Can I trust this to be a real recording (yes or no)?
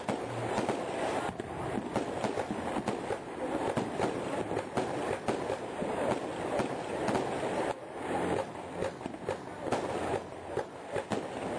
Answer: yes